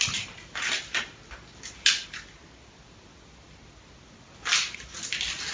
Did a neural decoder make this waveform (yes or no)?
no